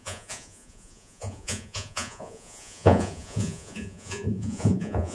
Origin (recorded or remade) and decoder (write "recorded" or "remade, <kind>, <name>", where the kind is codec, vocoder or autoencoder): remade, vocoder, Vocos